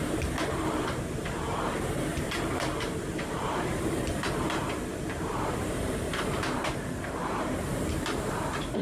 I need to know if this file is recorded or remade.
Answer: remade